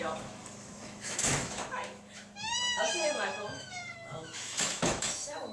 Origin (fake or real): fake